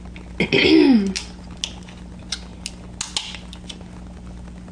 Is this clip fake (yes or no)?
no